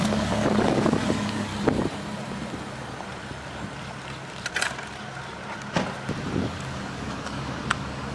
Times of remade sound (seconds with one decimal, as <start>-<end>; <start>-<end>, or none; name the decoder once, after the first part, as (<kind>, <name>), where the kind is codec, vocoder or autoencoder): 0.0-1.5 (codec, DAC); 6.4-8.1